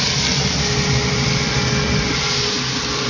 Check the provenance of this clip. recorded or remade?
recorded